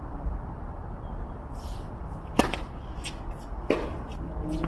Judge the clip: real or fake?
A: real